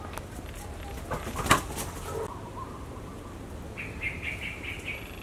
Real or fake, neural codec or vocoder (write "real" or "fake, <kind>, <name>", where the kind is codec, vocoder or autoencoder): real